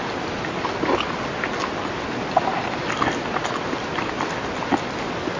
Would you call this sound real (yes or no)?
yes